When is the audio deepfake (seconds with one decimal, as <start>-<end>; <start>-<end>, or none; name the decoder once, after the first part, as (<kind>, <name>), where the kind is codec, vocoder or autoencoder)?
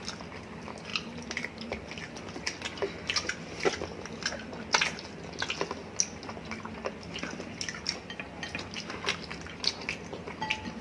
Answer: none